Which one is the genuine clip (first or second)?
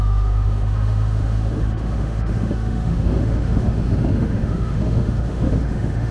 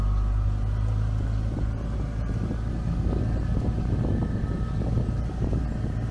second